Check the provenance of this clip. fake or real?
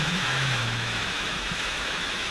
fake